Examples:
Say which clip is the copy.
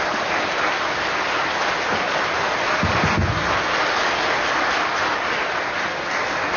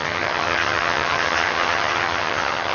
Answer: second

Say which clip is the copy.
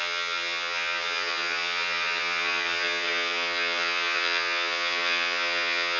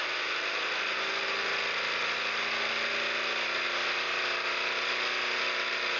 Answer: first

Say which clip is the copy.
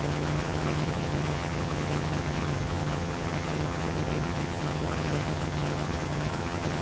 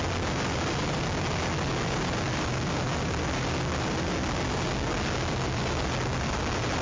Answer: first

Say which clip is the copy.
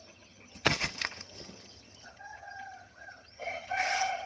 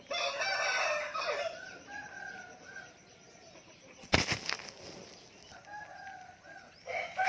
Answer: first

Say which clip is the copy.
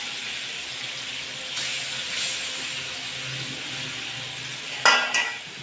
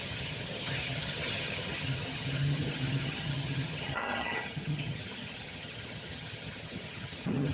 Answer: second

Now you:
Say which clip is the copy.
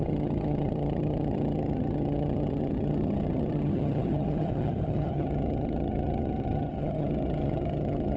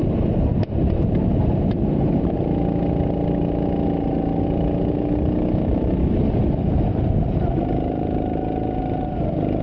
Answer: first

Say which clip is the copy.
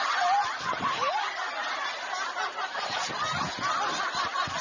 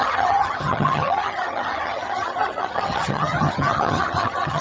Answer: second